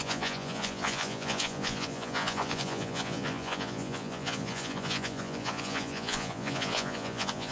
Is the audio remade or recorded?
remade